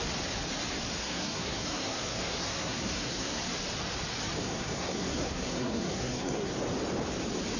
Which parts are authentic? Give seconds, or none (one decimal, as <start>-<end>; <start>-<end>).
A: 0.0-1.0; 3.4-4.4; 6.5-7.6